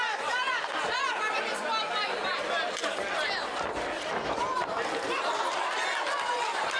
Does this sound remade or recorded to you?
recorded